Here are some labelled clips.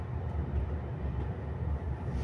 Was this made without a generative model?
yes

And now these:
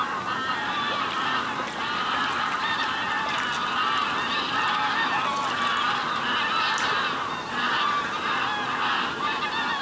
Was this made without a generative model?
yes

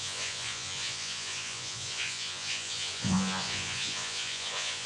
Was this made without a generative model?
no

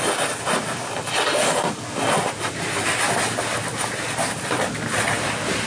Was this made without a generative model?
yes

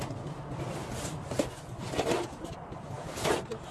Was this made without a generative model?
yes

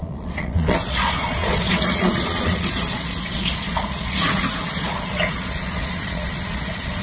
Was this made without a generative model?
no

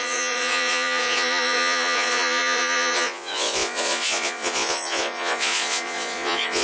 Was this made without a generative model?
no